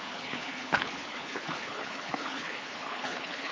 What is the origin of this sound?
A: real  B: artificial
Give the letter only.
B